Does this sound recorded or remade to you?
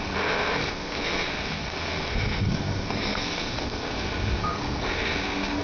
remade